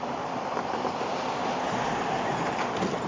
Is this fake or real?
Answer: real